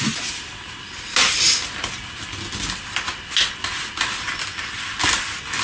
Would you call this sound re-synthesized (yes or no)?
no